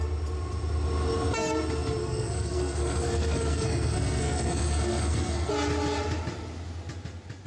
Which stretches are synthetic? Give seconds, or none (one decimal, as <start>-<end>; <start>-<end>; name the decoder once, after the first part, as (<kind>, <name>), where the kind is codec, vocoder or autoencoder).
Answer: 2.0-5.5 (codec, SNAC)

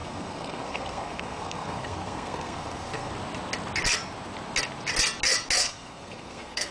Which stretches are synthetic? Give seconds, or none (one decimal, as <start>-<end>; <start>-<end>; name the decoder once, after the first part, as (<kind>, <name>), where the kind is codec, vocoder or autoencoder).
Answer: 0.0-3.1 (codec, SNAC); 5.6-6.7